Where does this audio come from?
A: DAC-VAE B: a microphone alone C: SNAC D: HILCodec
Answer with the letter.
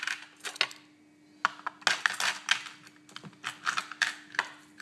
B